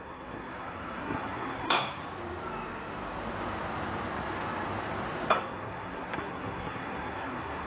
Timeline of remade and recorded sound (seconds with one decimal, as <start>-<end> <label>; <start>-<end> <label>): 0.0-2.0 remade; 2.0-5.3 recorded; 5.3-7.7 remade

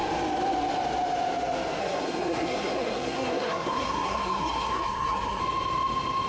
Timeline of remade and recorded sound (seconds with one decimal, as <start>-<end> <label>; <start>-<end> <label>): 0.0-1.8 recorded; 1.8-5.4 remade; 5.4-6.3 recorded

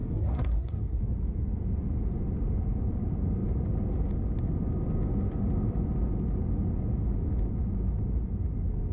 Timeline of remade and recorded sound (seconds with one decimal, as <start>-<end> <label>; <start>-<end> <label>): 0.0-1.0 remade; 1.0-8.9 recorded

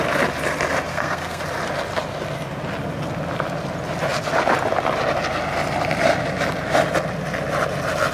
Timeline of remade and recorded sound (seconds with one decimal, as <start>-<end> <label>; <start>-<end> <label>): 0.0-0.9 recorded; 0.9-1.4 remade; 1.4-8.1 recorded